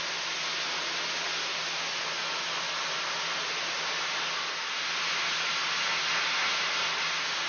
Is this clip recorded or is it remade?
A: recorded